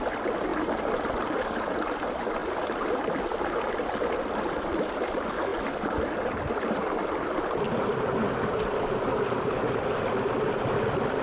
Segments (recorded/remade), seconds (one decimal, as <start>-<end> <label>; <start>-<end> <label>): 0.0-11.2 recorded